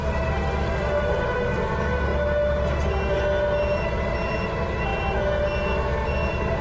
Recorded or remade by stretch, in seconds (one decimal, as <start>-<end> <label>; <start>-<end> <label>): 0.0-6.6 recorded